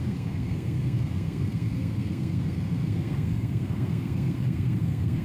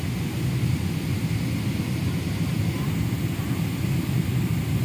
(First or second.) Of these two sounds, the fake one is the first